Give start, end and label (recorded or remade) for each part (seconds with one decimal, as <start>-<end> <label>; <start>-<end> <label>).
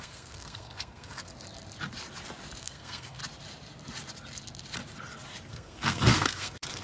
0.0-1.3 remade; 1.3-2.6 recorded; 2.6-3.2 remade; 3.2-5.5 recorded; 5.5-6.8 remade